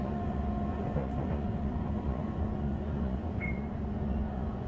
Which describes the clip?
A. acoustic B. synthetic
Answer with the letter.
B